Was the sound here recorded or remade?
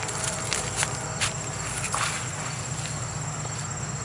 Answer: recorded